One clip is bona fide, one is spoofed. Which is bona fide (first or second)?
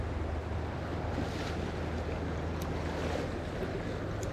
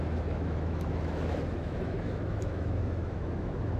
first